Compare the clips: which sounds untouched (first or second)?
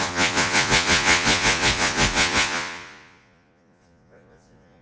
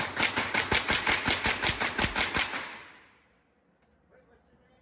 second